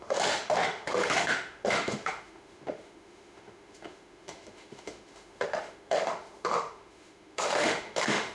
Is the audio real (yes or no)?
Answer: no